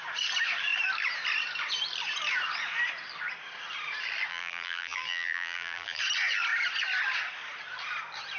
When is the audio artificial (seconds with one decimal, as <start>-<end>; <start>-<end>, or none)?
4.3-6.0